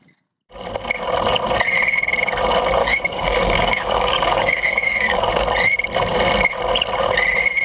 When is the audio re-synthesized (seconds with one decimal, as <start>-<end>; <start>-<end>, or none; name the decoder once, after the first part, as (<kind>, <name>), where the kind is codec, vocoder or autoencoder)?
2.8-5.3 (codec, DAC)